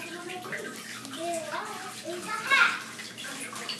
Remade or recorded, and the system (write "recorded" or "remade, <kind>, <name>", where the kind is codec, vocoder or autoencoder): recorded